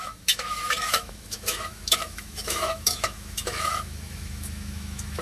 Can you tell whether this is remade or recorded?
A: remade